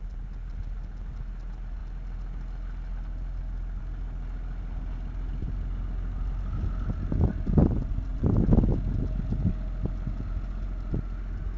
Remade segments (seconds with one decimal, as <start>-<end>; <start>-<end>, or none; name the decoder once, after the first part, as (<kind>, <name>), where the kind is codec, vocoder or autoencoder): none